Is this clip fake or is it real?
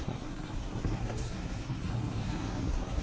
fake